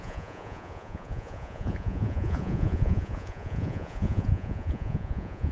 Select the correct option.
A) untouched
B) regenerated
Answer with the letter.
B